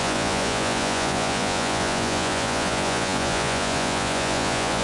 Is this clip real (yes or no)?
no